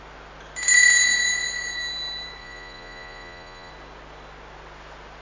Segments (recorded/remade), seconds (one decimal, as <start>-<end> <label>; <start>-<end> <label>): 0.0-2.4 recorded; 2.4-3.7 remade; 3.7-5.2 recorded